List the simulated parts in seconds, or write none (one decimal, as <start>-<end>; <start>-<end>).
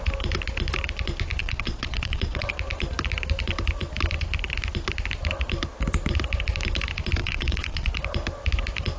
1.4-2.5; 7.2-7.9